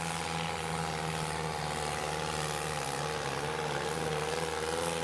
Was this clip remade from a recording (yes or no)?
no